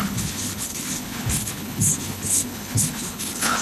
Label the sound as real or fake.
fake